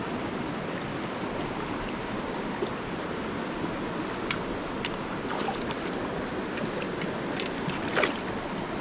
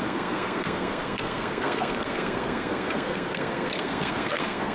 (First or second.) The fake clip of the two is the second